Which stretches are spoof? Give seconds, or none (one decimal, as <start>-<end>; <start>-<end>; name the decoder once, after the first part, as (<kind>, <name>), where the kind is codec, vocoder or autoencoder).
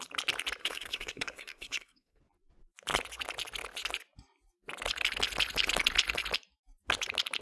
0.6-2.2 (codec, SNAC)